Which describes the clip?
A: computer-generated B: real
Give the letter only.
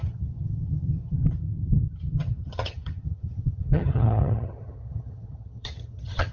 A